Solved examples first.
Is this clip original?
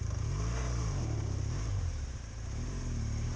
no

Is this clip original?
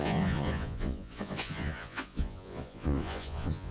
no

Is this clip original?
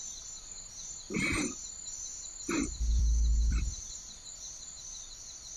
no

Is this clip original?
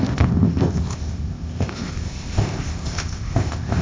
no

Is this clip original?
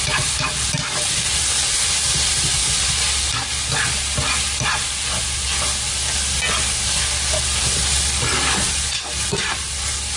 yes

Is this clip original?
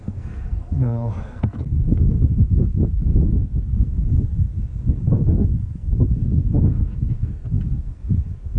no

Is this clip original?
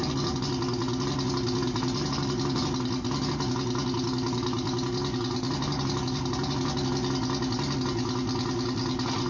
yes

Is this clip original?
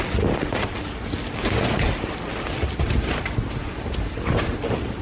yes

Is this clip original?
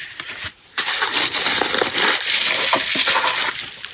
no